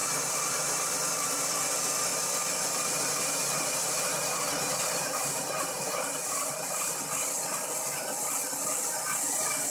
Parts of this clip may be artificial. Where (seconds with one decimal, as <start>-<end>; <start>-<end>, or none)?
0.0-1.4; 2.1-6.9